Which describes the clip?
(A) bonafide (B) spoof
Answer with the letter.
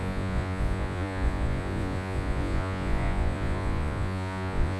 B